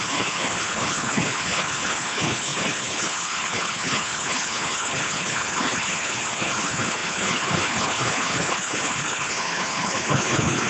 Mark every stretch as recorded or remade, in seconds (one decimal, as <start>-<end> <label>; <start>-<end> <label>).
0.0-10.7 remade